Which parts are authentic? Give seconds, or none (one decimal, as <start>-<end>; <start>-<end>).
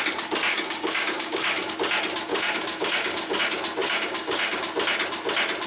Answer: 0.0-0.5; 1.7-2.3; 3.4-3.8; 4.6-5.7